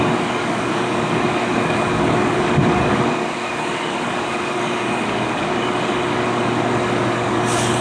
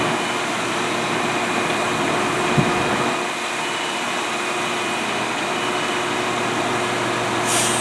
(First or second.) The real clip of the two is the second